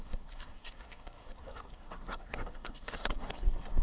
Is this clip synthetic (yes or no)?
yes